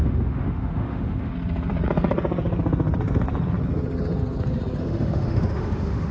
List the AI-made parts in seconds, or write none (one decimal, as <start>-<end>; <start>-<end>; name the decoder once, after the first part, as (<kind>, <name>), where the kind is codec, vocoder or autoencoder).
0.0-1.3 (autoencoder, DAC-VAE); 4.8-6.1